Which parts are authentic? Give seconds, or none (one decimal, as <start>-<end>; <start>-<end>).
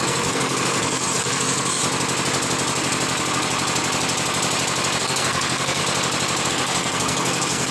1.8-5.0; 5.8-6.5